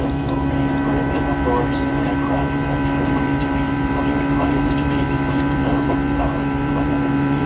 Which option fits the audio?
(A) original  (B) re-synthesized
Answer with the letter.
B